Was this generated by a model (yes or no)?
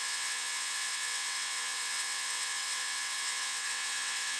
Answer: yes